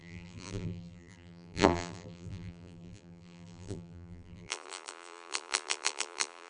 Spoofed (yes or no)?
yes